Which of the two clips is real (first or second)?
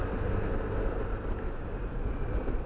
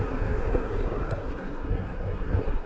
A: first